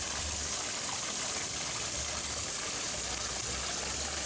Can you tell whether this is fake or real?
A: real